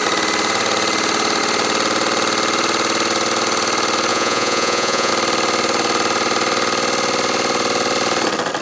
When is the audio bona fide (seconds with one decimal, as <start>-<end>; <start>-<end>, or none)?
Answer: 0.0-4.1; 5.1-8.6